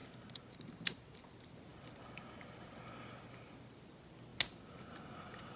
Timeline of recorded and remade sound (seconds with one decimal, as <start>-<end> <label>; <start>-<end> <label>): 0.0-1.2 remade; 1.2-5.6 recorded